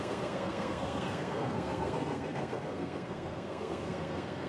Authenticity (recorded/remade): remade